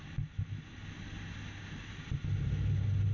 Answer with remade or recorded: recorded